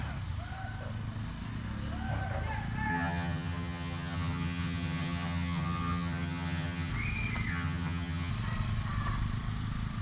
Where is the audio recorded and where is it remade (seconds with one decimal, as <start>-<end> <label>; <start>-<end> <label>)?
0.0-2.9 recorded; 2.9-6.9 remade; 6.9-7.5 recorded; 7.5-8.3 remade; 8.3-10.0 recorded